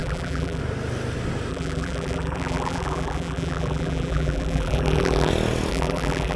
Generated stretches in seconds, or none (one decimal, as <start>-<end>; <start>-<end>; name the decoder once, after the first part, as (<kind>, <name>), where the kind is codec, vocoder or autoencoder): 0.0-0.6 (vocoder, BigVGAN v2); 1.5-5.3; 5.7-6.4

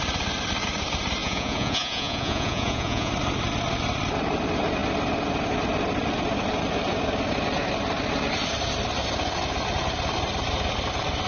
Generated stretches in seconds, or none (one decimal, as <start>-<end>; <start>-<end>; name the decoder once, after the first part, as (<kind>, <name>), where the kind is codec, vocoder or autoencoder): 1.2-3.1 (vocoder, Vocos)

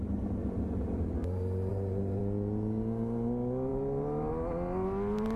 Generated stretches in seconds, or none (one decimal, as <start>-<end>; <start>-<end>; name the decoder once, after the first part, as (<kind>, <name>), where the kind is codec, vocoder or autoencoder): 1.7-2.2 (vocoder, BigVGAN v2); 3.7-4.3

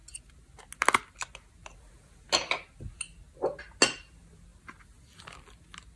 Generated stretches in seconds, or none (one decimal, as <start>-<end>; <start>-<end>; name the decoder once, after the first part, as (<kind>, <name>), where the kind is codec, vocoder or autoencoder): none

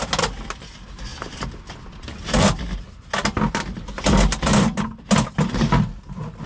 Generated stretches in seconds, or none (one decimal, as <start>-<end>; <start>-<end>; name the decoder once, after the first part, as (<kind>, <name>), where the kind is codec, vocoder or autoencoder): none